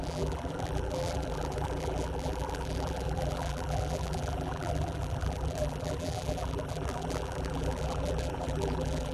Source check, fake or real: fake